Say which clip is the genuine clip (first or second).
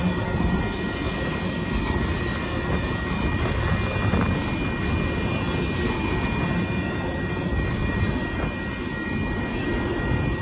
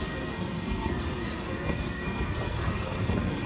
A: first